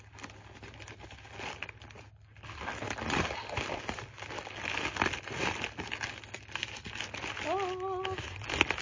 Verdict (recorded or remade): recorded